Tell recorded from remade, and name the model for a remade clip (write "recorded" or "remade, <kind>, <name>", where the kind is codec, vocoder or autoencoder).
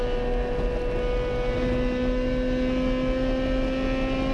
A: recorded